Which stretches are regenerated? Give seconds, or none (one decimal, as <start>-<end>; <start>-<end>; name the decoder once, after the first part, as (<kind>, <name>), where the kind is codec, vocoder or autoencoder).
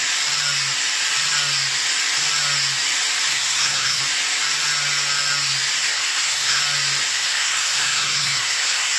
3.3-4.0 (codec, SNAC); 5.8-6.6; 7.1-9.0